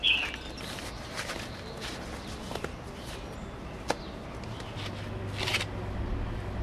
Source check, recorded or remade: recorded